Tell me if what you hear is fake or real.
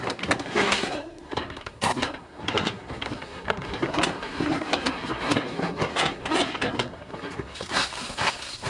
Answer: fake